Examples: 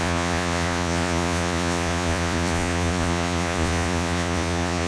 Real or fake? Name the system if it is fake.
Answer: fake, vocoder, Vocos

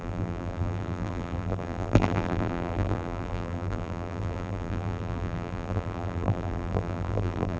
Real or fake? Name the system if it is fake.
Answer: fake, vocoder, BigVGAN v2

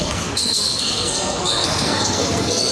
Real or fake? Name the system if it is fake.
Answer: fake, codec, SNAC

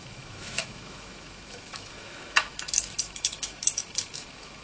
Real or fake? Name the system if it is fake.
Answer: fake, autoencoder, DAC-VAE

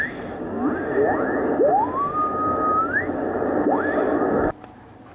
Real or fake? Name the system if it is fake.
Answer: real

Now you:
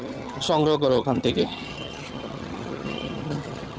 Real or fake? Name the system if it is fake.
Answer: fake, vocoder, HiFi-GAN